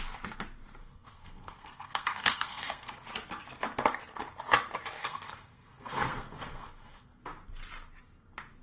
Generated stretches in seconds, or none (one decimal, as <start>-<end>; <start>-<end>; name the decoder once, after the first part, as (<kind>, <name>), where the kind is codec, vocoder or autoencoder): 0.8-3.1 (codec, SNAC); 5.0-7.2